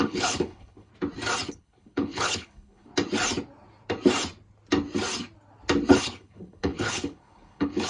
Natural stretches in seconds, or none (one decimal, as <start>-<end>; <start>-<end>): 0.9-1.5; 2.9-5.9